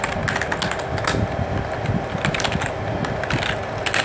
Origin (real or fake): real